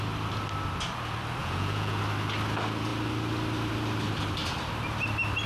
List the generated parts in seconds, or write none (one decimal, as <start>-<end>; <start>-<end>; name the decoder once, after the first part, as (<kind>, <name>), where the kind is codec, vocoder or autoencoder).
1.4-2.0 (vocoder, Vocos)